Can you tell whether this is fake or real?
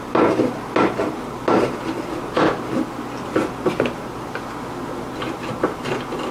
real